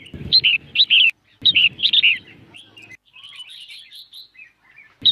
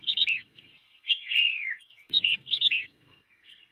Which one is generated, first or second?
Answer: second